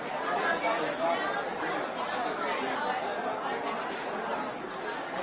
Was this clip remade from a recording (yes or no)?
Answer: no